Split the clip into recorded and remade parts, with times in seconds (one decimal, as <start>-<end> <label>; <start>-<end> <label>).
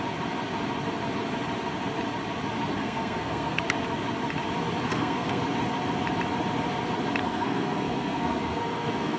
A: 0.0-2.8 recorded; 2.8-3.6 remade; 3.6-4.9 recorded; 4.9-5.4 remade; 5.4-7.2 recorded; 7.2-9.2 remade